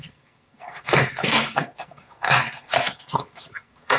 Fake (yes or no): yes